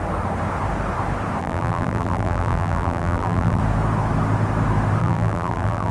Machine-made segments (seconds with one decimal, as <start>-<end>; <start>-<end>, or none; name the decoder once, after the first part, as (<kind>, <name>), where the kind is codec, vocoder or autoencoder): 1.4-3.6 (vocoder, BigVGAN v2); 5.0-5.9